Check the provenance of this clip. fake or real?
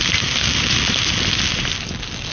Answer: real